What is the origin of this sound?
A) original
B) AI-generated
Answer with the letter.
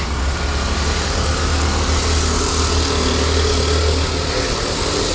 A